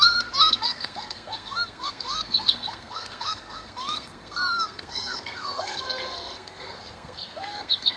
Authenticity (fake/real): fake